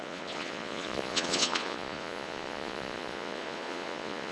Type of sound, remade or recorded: remade